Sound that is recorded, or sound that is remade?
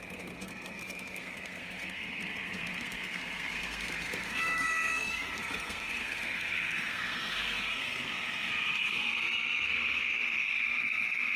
remade